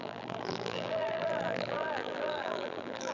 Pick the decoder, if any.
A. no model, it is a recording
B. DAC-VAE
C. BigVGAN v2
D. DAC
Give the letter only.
C